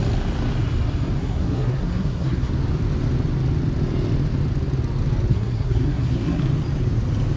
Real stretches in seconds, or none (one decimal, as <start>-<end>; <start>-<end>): 0.0-1.2; 2.5-5.3; 6.4-7.4